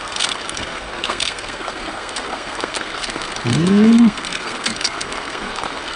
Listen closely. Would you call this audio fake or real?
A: fake